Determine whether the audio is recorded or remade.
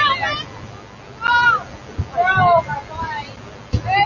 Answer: recorded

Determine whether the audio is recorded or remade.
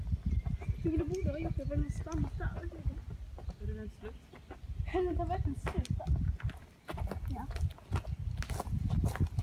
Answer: recorded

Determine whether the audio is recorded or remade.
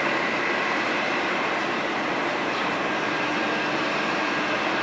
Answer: remade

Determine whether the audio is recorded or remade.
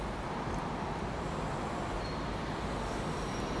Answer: remade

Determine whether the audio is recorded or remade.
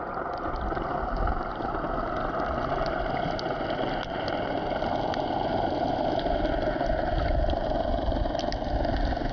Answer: recorded